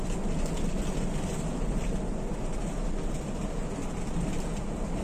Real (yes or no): yes